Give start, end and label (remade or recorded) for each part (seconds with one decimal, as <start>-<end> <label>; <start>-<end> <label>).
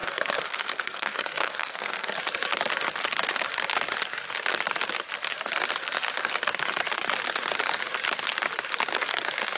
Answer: 0.0-2.2 remade; 2.2-9.6 recorded